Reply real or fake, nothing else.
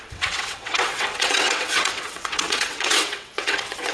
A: fake